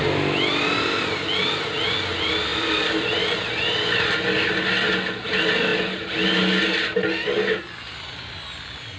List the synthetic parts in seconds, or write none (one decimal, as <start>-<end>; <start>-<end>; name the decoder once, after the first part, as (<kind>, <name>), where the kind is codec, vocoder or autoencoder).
2.5-3.2 (vocoder, BigVGAN v2)